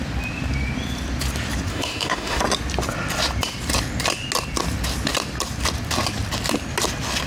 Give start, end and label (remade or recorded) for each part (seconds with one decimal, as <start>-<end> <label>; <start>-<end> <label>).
0.0-1.7 recorded; 1.7-2.4 remade; 2.4-7.3 recorded